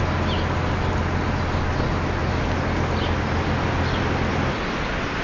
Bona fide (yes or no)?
yes